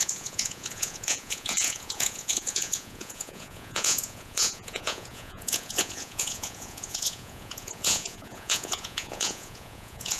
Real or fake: fake